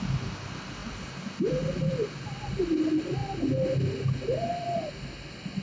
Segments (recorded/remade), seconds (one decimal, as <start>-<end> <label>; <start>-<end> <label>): 0.0-5.6 recorded